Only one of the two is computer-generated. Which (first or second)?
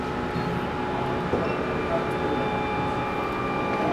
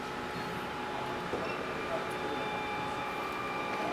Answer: second